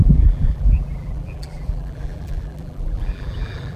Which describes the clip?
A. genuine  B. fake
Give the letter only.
B